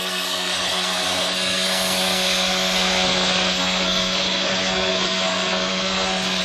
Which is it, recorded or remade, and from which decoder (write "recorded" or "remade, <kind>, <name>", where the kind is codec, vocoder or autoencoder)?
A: remade, codec, SNAC